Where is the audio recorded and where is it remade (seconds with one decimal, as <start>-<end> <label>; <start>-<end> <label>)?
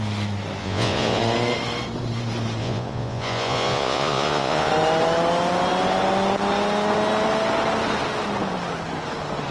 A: 0.0-0.6 recorded; 0.6-1.2 remade; 1.2-2.6 recorded; 2.6-4.7 remade; 4.7-9.5 recorded